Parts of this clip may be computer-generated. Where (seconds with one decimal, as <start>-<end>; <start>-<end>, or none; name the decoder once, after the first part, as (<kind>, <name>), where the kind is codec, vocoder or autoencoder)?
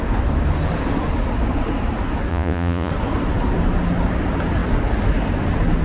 2.3-2.9 (vocoder, Vocos)